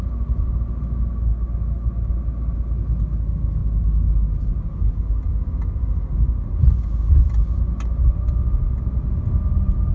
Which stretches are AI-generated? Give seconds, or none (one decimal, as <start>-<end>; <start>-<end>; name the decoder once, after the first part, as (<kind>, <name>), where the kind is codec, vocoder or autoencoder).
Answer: none